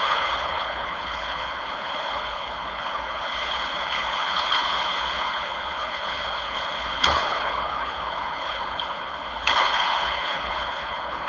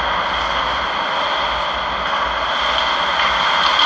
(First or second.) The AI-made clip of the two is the first